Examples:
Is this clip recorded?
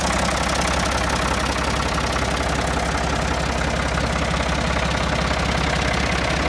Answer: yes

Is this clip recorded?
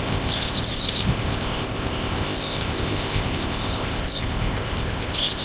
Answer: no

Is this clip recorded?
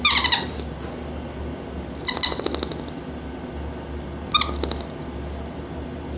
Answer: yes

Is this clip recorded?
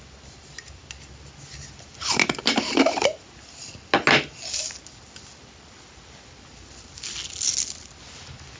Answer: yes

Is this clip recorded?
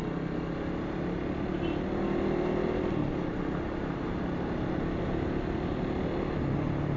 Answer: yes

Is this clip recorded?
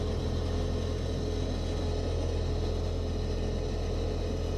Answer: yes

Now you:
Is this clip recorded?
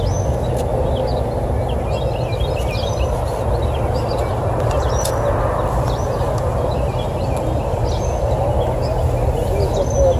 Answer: yes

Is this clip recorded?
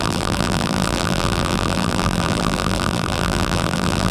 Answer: no